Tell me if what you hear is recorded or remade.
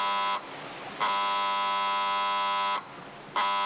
recorded